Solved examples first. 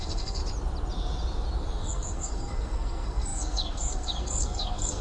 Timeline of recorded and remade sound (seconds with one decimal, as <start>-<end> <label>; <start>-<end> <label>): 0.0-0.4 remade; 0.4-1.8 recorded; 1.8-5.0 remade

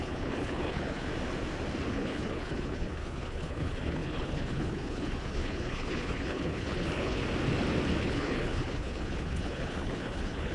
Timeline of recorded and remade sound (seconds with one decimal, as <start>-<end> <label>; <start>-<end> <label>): 0.0-1.1 remade; 1.1-1.9 recorded; 1.9-7.2 remade; 7.2-8.0 recorded; 8.0-10.5 remade

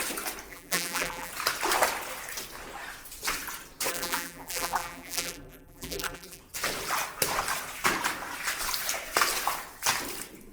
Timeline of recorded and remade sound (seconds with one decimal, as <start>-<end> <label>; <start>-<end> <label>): 0.0-0.5 recorded; 0.5-1.3 remade; 1.3-3.9 recorded; 3.9-6.4 remade; 6.4-10.5 recorded

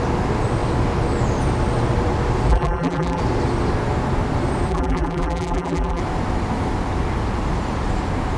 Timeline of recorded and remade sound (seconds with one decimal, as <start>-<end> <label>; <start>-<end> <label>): 0.0-2.5 recorded; 2.5-3.2 remade; 3.2-4.7 recorded; 4.7-6.0 remade; 6.0-8.4 recorded